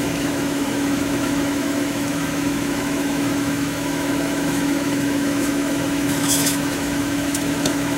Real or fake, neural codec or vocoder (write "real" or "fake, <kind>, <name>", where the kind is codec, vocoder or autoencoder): fake, autoencoder, DAC-VAE